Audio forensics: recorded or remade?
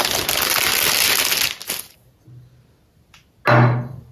recorded